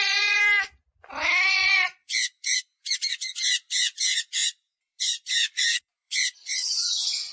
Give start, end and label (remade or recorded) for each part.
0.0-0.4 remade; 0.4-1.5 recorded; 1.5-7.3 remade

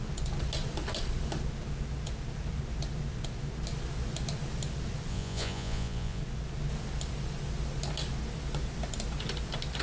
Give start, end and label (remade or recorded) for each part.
0.0-5.1 recorded; 5.1-6.2 remade; 6.2-9.8 recorded

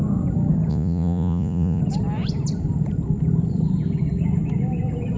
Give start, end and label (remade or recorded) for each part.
0.0-0.7 recorded; 0.7-1.8 remade; 1.8-5.2 recorded

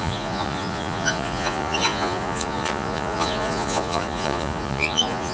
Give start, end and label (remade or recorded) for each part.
0.0-5.3 remade

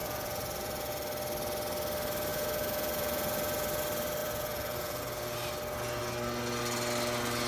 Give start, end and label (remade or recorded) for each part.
0.0-0.9 remade; 0.9-2.3 recorded; 2.3-3.8 remade; 3.8-4.2 recorded; 4.2-5.0 remade; 5.0-7.5 recorded

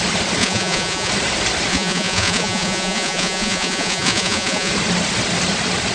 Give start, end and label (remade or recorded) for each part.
0.0-0.4 recorded; 0.4-1.1 remade; 1.1-1.7 recorded; 1.7-4.7 remade; 4.7-5.9 recorded

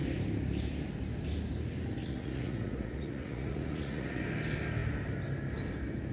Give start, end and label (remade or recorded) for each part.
0.0-2.0 recorded; 2.0-4.2 remade; 4.2-6.1 recorded

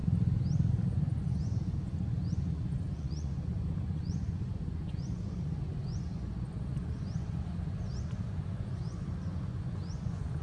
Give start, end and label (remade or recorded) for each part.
0.0-1.0 recorded; 1.0-10.4 remade